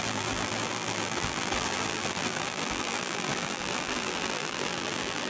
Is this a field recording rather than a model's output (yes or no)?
no